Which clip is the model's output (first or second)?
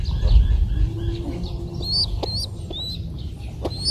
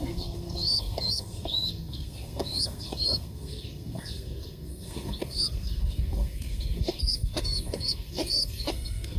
second